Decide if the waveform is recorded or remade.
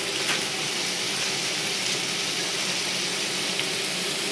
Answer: recorded